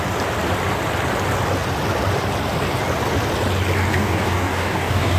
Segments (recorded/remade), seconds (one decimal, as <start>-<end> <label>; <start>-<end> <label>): 0.0-3.9 recorded; 3.9-5.2 remade